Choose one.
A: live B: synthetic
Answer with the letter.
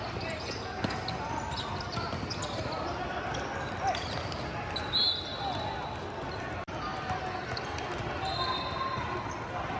A